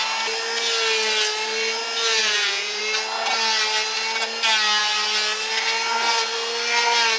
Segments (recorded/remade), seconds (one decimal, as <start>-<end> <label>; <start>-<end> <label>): 0.0-2.2 recorded; 2.2-2.8 remade; 2.8-7.2 recorded